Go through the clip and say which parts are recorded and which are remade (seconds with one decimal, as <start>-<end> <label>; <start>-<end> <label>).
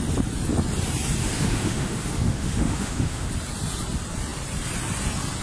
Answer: 0.0-1.2 recorded; 1.2-3.3 remade; 3.3-5.4 recorded